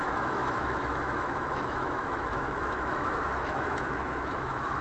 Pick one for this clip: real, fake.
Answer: fake